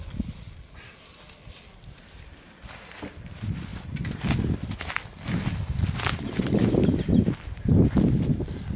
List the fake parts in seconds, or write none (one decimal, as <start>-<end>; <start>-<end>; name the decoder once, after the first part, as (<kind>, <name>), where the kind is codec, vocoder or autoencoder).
none